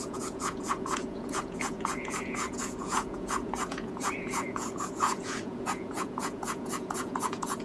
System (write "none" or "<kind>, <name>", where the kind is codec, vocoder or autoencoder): vocoder, Vocos